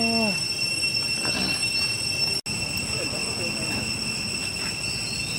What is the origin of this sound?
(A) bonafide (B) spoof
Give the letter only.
A